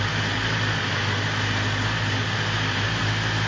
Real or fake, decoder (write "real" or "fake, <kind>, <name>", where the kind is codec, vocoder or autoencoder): real